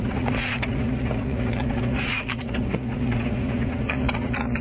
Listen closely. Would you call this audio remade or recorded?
remade